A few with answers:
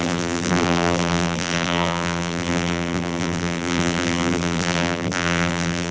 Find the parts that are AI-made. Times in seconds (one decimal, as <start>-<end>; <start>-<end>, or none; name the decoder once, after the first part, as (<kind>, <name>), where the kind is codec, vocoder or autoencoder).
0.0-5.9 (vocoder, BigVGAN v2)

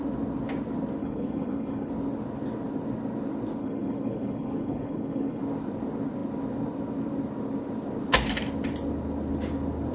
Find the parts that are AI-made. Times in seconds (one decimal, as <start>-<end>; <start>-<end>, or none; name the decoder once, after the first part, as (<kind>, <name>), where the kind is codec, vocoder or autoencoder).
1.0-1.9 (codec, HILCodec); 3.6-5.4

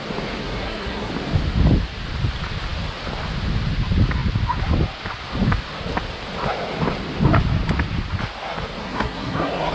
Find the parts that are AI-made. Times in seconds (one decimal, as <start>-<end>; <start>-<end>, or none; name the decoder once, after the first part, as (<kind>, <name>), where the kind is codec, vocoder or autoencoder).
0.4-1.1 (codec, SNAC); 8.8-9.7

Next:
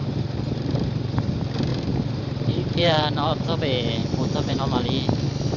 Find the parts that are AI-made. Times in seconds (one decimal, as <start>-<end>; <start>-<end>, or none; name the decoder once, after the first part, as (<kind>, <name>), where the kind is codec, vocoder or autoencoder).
0.0-1.2 (vocoder, BigVGAN v2); 1.7-3.6; 4.0-4.6

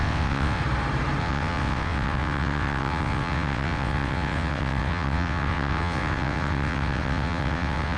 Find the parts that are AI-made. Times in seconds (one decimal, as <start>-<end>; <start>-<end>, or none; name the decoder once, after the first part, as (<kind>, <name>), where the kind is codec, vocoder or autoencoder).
0.0-0.6 (vocoder, WaveNeXt); 1.2-8.0

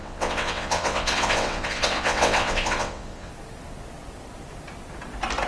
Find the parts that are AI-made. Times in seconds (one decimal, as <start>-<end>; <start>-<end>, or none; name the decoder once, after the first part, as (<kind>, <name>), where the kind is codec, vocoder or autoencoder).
0.0-3.3 (vocoder, WaveNeXt)

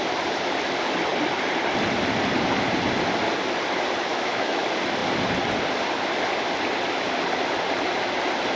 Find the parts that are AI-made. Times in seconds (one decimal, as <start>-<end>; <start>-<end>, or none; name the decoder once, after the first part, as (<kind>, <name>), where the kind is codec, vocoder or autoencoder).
4.1-4.6 (autoencoder, DAC-VAE)